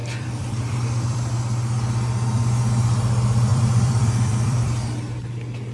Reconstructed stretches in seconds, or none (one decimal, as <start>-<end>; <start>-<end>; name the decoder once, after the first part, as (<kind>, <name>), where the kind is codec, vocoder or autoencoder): 0.0-1.2 (vocoder, BigVGAN v2); 3.5-4.7